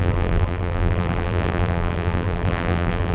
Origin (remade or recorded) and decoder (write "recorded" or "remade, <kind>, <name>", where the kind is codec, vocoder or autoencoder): remade, vocoder, BigVGAN v2